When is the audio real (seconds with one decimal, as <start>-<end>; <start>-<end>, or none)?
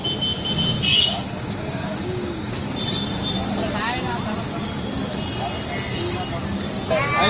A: 0.0-0.9; 2.5-7.3